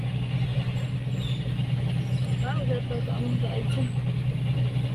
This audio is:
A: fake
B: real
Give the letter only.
B